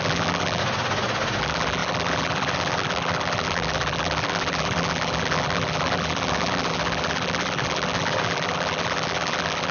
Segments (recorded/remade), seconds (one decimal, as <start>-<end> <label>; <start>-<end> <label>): 0.0-0.6 remade; 0.6-1.4 recorded; 1.4-9.7 remade